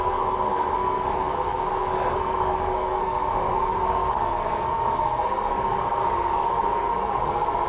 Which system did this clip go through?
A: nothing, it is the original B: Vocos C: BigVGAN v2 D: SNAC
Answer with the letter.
D